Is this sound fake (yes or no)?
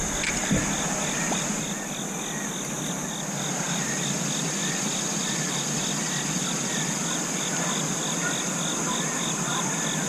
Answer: no